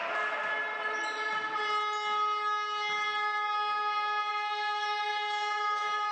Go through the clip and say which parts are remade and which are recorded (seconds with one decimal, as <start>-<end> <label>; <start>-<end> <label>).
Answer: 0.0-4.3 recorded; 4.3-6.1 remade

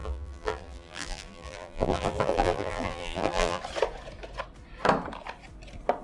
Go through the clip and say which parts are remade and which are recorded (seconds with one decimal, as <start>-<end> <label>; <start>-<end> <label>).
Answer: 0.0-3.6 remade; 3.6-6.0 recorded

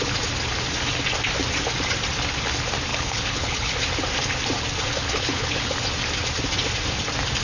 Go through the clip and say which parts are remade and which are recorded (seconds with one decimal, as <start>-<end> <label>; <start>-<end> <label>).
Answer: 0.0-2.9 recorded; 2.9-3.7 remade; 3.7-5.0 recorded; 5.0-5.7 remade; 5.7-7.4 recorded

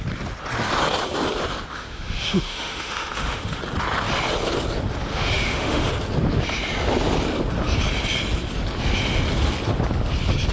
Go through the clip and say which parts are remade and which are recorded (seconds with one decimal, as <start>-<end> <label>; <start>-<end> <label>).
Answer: 0.0-1.7 recorded; 1.7-3.6 remade; 3.6-5.1 recorded; 5.1-5.9 remade; 5.9-10.5 recorded